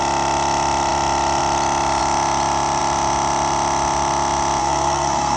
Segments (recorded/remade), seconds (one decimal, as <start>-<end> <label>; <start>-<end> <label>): 0.0-4.6 recorded; 4.6-5.4 remade